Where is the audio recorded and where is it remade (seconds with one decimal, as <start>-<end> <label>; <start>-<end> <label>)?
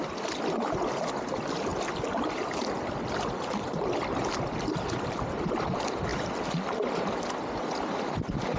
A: 0.0-8.6 recorded